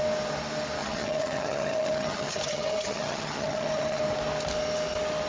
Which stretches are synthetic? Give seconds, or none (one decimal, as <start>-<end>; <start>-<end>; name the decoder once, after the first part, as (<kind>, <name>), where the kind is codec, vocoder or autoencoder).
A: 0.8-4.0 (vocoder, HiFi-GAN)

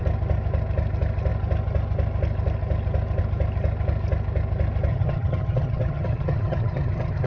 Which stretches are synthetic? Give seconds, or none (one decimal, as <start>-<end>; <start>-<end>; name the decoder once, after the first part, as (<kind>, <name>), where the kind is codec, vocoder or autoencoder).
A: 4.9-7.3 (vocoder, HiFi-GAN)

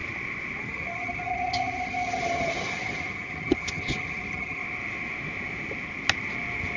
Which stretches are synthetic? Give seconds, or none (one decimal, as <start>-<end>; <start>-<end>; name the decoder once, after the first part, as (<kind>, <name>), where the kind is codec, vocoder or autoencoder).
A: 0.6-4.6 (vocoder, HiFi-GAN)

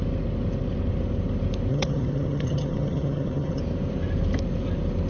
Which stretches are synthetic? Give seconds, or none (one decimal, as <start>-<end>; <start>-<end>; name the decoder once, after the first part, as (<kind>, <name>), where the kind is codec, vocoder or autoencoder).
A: 1.7-3.6 (vocoder, HiFi-GAN)

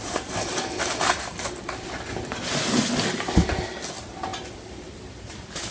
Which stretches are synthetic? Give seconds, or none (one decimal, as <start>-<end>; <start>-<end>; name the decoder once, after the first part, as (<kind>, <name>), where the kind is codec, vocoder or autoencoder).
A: none

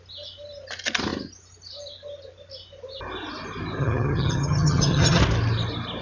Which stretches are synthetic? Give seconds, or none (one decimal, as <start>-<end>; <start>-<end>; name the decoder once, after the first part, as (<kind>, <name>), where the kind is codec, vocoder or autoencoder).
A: 3.8-5.2 (vocoder, HiFi-GAN)

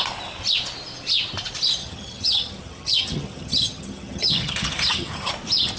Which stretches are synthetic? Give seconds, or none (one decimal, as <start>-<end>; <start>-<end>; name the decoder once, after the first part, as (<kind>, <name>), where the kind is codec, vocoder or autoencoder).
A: 1.8-5.3 (vocoder, HiFi-GAN)